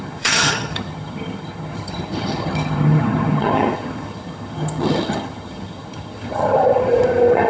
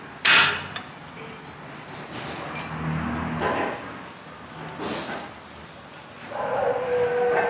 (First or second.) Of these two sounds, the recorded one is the second